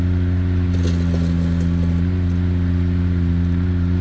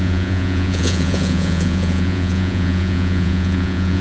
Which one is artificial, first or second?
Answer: second